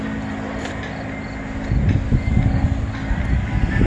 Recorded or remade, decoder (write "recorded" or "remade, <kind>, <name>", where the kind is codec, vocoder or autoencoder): recorded